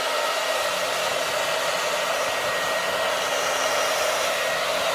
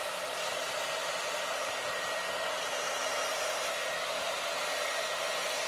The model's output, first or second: second